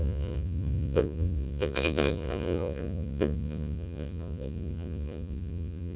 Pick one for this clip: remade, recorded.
remade